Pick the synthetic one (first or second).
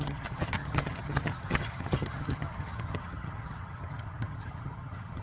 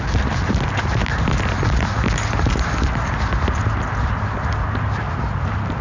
first